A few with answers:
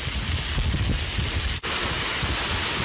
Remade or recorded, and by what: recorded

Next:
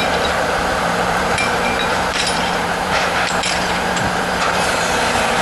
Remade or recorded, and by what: remade, vocoder, BigVGAN v2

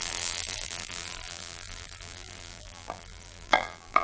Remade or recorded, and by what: remade, vocoder, BigVGAN v2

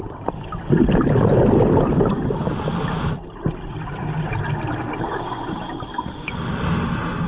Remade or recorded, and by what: remade, vocoder, BigVGAN v2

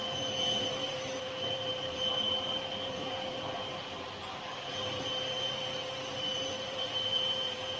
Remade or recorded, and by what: remade, vocoder, BigVGAN v2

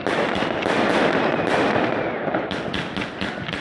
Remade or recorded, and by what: recorded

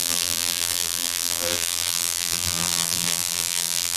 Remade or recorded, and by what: remade, vocoder, BigVGAN v2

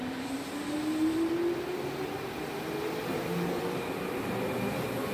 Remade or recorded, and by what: recorded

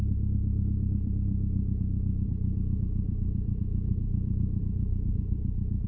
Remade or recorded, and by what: remade, vocoder, BigVGAN v2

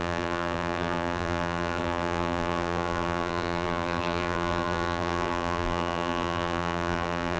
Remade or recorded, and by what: remade, vocoder, BigVGAN v2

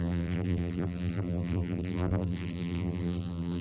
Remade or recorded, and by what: remade, vocoder, BigVGAN v2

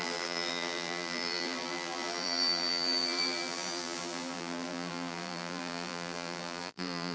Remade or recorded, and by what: remade, vocoder, BigVGAN v2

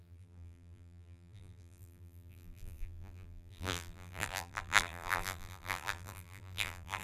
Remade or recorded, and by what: remade, vocoder, BigVGAN v2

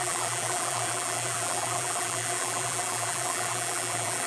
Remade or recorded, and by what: remade, vocoder, BigVGAN v2